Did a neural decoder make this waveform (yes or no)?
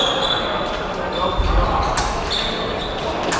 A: no